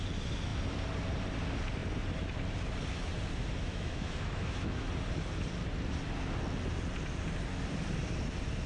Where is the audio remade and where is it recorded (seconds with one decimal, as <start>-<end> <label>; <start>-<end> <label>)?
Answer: 0.0-3.7 recorded; 3.7-4.9 remade; 4.9-8.7 recorded